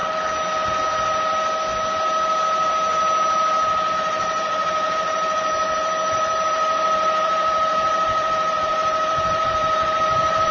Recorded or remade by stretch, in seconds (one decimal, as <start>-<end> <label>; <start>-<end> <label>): 0.0-3.9 recorded; 3.9-10.5 remade